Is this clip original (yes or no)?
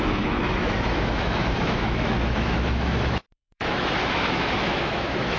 no